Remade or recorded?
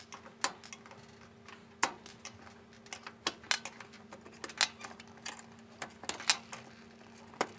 recorded